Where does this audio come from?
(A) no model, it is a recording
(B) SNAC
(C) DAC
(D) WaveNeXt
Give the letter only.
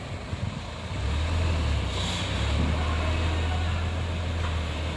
A